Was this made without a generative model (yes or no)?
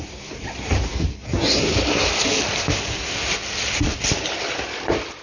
yes